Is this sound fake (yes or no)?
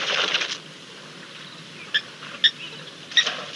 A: no